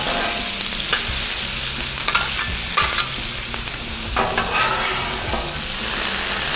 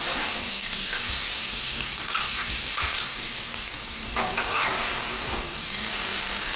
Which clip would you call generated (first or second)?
second